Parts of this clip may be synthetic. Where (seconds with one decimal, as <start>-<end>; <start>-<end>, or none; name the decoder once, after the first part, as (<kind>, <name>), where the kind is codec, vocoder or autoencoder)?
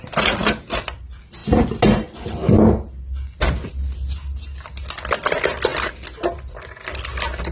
none